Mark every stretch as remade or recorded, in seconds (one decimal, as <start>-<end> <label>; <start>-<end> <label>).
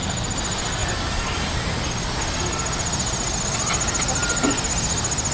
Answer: 0.0-5.3 recorded